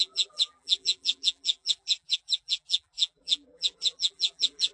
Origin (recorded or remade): remade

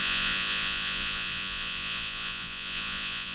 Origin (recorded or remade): remade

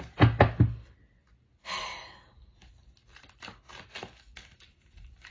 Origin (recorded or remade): recorded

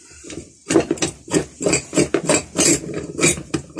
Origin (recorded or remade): recorded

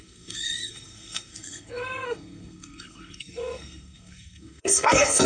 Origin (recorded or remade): remade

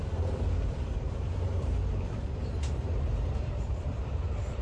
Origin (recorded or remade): remade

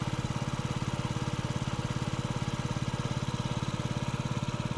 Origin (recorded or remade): recorded